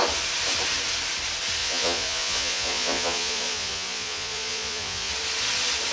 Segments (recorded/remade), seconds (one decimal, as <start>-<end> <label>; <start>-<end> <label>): 0.0-1.6 recorded; 1.6-5.1 remade; 5.1-5.9 recorded